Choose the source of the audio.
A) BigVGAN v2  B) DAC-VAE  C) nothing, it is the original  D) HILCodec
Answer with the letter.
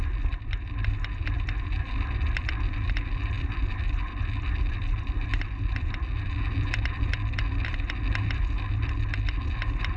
A